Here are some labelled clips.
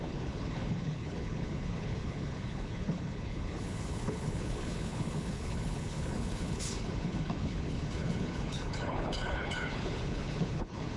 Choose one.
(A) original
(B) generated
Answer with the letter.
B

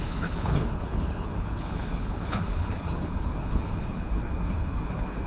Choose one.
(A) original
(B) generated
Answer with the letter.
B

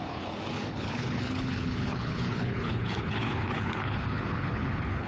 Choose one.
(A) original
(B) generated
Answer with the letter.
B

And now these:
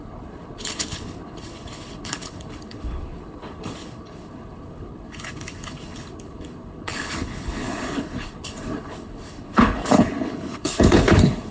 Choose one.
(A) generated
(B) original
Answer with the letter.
A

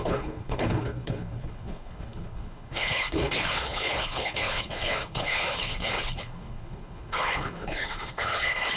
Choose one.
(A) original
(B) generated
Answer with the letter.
B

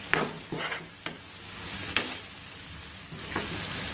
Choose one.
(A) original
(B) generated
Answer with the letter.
A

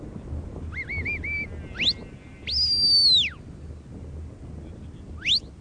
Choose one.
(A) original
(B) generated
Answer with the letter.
A